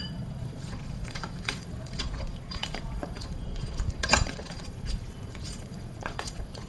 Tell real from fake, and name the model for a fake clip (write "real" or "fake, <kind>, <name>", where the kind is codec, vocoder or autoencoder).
fake, vocoder, Vocos